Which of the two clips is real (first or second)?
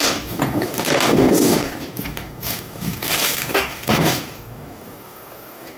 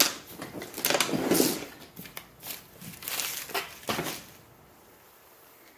second